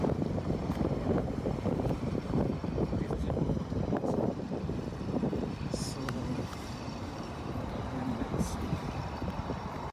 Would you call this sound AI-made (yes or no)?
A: yes